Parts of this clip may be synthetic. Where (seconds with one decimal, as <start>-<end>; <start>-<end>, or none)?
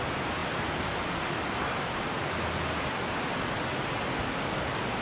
none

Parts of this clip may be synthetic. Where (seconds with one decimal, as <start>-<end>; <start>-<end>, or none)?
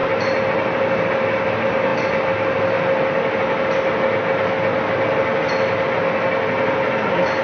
0.0-1.0; 1.9-2.6